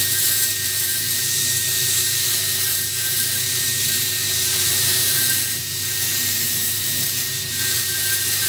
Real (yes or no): no